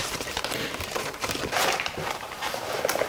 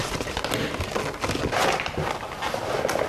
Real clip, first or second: second